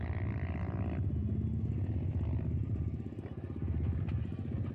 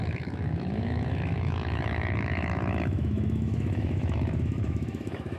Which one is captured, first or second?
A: first